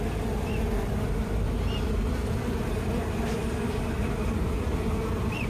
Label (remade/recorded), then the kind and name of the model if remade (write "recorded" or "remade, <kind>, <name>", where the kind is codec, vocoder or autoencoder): recorded